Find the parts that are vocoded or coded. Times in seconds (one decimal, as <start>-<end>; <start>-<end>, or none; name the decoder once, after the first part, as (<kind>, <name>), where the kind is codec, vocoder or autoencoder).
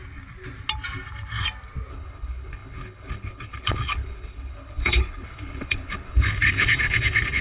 1.9-7.4 (codec, HILCodec)